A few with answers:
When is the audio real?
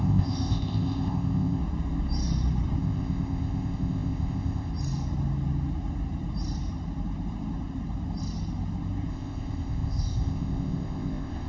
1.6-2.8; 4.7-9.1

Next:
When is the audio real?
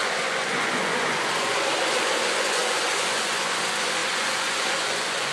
none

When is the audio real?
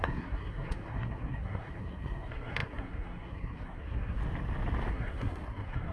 4.2-4.9